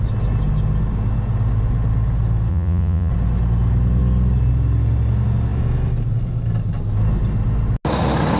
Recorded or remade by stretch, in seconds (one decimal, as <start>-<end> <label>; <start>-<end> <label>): 0.0-2.5 recorded; 2.5-3.1 remade; 3.1-8.4 recorded

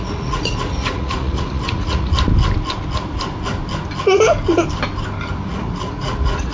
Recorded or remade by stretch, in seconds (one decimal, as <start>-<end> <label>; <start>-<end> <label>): 0.0-2.1 remade; 2.1-5.5 recorded; 5.5-6.5 remade

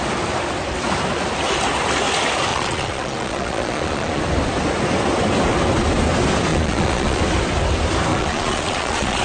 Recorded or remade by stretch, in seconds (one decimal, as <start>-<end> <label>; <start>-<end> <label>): 0.0-2.5 recorded; 2.5-4.2 remade; 4.2-6.5 recorded; 6.5-7.2 remade; 7.2-8.1 recorded; 8.1-9.2 remade

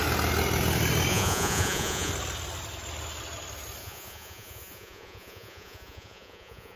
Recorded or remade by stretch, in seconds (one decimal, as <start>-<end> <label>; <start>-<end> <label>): 0.0-1.1 recorded; 1.1-2.1 remade; 2.1-3.8 recorded; 3.8-6.8 remade

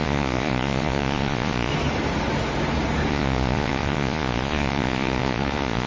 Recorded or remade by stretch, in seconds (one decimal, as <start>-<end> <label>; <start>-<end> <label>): 0.0-1.7 remade; 1.7-3.1 recorded; 3.1-5.9 remade

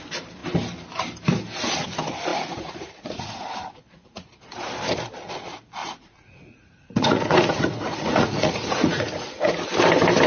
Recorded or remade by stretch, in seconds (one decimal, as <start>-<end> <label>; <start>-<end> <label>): 0.0-2.3 recorded; 2.3-4.4 remade; 4.4-5.8 recorded; 5.8-9.5 remade; 9.5-10.3 recorded

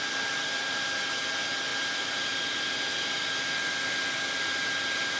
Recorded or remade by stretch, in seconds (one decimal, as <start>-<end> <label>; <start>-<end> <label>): 0.0-5.2 recorded

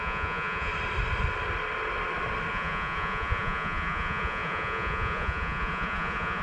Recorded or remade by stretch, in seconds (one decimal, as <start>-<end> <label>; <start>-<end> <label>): 0.0-0.7 remade; 0.7-2.5 recorded; 2.5-6.4 remade